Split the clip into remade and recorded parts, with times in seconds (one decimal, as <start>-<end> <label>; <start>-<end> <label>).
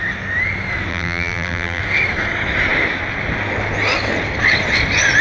0.0-0.9 recorded; 0.9-1.8 remade; 1.8-5.2 recorded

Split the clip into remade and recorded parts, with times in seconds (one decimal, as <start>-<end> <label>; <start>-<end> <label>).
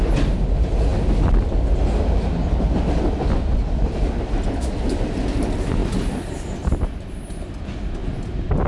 0.0-8.7 recorded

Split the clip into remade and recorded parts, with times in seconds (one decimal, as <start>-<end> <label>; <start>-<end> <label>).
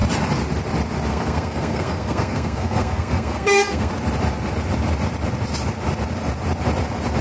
0.0-1.1 recorded; 1.1-3.9 remade; 3.9-7.2 recorded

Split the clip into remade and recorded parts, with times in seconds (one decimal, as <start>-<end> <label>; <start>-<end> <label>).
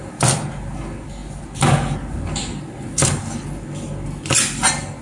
0.0-5.0 recorded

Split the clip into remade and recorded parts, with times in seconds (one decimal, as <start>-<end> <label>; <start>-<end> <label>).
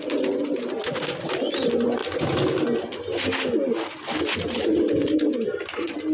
0.0-6.1 recorded